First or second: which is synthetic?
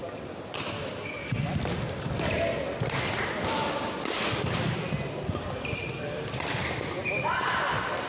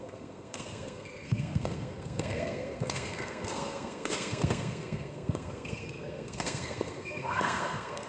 second